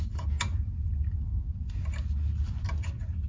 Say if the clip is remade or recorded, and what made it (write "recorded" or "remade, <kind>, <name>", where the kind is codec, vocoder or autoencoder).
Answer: recorded